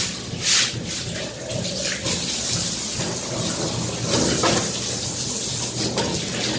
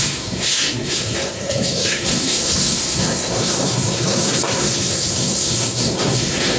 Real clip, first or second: first